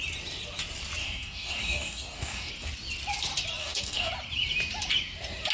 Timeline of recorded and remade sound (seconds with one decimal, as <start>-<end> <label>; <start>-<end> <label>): 0.0-1.0 recorded; 1.0-2.5 remade; 2.5-3.6 recorded; 3.6-4.1 remade; 4.1-5.5 recorded